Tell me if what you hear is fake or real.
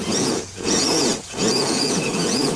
fake